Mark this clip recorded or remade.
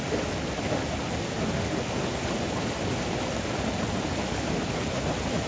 recorded